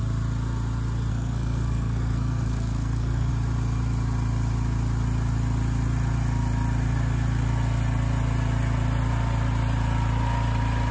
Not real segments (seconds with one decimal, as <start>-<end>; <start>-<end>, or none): 1.1-3.3